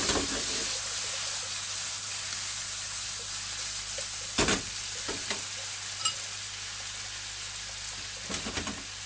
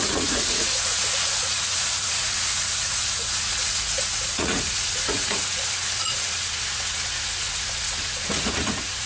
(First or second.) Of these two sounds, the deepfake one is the second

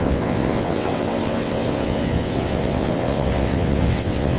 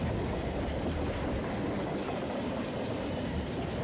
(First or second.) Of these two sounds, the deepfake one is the first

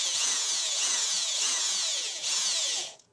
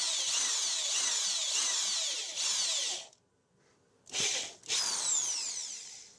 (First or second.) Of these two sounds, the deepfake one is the first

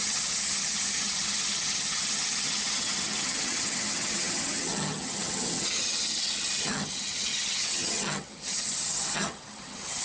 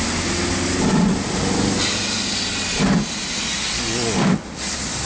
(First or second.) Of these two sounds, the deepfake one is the first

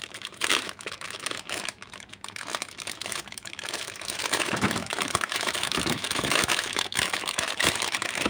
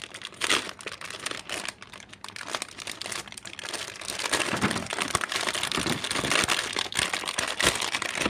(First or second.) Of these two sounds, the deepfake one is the first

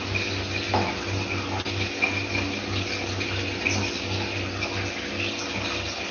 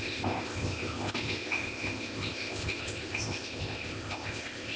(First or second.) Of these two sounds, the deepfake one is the second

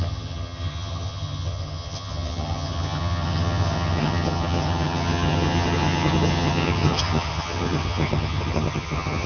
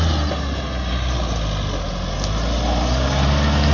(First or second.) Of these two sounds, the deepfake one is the first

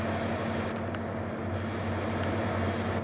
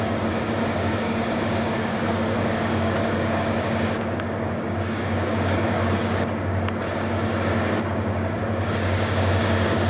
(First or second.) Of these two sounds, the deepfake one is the second